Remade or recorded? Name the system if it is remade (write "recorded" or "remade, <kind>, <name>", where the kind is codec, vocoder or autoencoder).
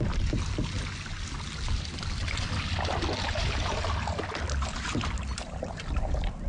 recorded